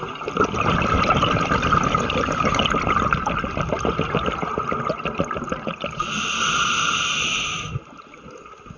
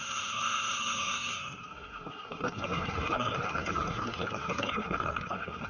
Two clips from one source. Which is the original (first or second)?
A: first